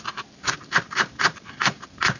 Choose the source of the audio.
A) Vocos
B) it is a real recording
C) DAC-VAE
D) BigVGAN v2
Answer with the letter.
B